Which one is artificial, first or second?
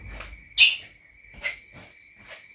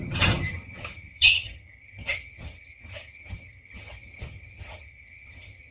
second